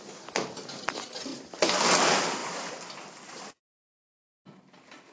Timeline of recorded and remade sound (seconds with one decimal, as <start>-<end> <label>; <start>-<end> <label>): 0.0-5.1 recorded